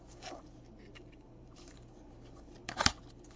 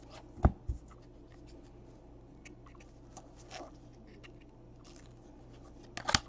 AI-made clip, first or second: first